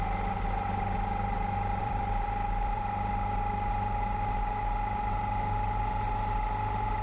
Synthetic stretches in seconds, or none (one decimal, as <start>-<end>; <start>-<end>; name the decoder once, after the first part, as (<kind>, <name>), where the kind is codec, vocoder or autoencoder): 1.8-2.8 (vocoder, BigVGAN v2)